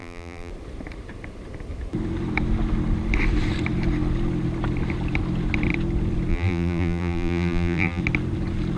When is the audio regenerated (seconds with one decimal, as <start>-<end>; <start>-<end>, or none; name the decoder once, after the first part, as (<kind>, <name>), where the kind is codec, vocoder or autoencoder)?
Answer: 0.0-0.5 (vocoder, BigVGAN v2); 6.3-8.0